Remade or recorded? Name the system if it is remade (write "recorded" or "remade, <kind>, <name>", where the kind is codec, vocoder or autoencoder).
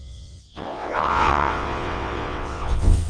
remade, vocoder, WaveNeXt